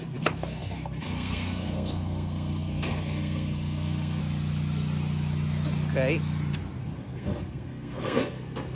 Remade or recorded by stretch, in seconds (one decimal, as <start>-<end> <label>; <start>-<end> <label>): 0.0-4.2 remade; 4.2-6.8 recorded; 6.8-8.8 remade